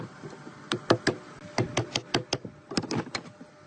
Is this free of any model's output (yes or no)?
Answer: yes